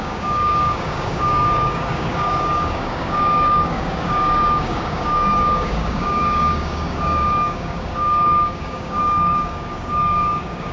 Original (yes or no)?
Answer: no